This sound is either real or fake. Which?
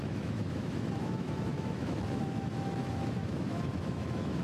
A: fake